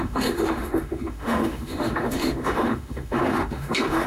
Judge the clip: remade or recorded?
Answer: remade